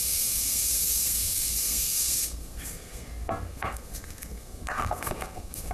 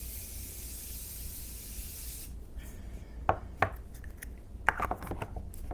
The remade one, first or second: first